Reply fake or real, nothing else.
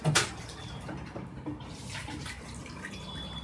fake